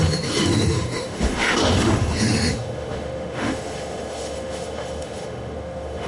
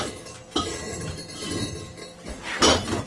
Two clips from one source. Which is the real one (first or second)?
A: second